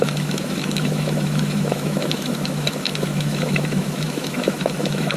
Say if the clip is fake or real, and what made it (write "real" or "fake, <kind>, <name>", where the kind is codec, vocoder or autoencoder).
fake, autoencoder, DAC-VAE